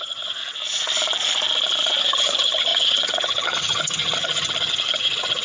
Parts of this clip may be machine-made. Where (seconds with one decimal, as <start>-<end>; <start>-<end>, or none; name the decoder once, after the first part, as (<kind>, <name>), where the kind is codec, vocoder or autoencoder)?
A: 0.0-0.4 (vocoder, HiFi-GAN); 2.0-5.4